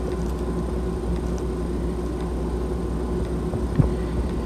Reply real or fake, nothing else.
real